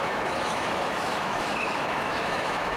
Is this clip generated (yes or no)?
yes